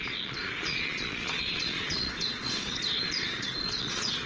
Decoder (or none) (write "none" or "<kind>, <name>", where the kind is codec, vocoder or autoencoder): vocoder, Vocos